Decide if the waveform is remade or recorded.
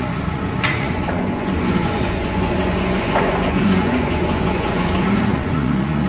remade